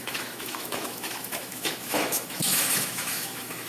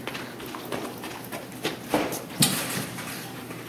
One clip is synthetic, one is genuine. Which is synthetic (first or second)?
first